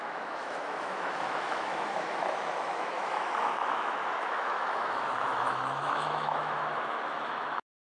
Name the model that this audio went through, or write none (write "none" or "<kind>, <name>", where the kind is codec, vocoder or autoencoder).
autoencoder, DAC-VAE